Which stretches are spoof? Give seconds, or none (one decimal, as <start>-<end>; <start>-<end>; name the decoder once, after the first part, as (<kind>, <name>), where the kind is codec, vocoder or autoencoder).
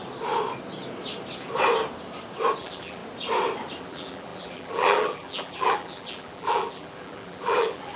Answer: 2.6-3.0 (vocoder, BigVGAN v2); 3.8-8.0